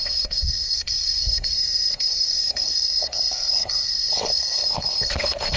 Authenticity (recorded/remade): remade